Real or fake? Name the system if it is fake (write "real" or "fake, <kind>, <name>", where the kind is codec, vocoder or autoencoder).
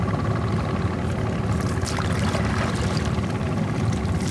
real